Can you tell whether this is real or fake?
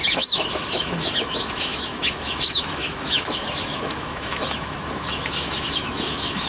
fake